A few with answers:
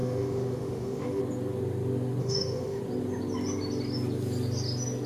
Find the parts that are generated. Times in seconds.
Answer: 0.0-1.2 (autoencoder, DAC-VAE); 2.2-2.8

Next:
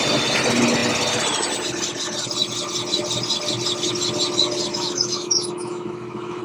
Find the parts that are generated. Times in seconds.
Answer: 4.7-6.4 (autoencoder, DAC-VAE)

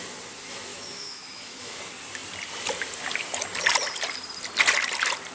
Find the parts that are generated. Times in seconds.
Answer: 0.7-1.8 (autoencoder, DAC-VAE)

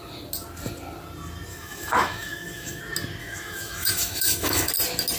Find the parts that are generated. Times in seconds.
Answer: 1.5-2.8 (autoencoder, DAC-VAE); 3.2-4.7

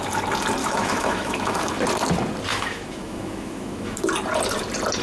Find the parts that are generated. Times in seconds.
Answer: 0.6-1.7 (autoencoder, DAC-VAE); 2.5-4.1